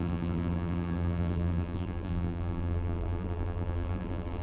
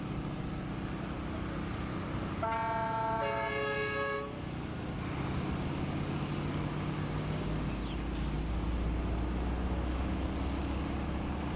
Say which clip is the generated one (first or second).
first